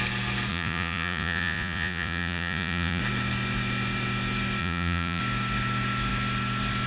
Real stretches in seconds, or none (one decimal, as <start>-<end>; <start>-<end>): 0.0-0.5; 3.0-4.6; 5.2-6.9